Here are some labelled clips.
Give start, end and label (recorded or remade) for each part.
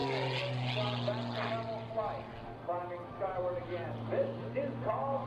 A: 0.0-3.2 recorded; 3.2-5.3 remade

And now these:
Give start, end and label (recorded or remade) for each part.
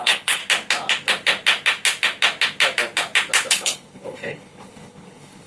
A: 0.0-0.4 remade; 0.4-3.5 recorded; 3.5-5.5 remade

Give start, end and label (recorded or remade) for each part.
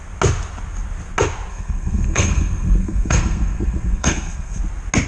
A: 0.0-1.5 recorded; 1.5-4.6 remade; 4.6-5.1 recorded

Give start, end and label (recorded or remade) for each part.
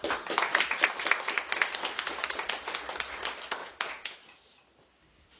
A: 0.0-3.6 recorded; 3.6-4.4 remade; 4.4-5.4 recorded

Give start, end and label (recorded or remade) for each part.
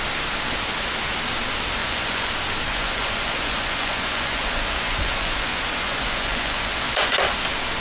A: 0.0-1.8 recorded; 1.8-2.3 remade; 2.3-2.7 recorded; 2.7-7.2 remade; 7.2-7.8 recorded